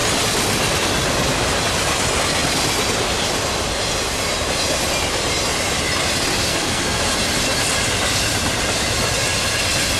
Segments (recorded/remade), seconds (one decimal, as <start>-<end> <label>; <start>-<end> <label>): 0.0-6.5 recorded; 6.5-7.0 remade; 7.0-10.0 recorded